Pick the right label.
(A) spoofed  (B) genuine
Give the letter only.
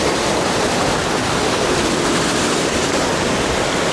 B